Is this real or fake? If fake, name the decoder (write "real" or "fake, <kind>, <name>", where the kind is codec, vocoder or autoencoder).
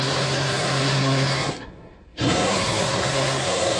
fake, codec, SNAC